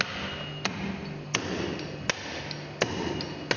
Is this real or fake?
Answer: real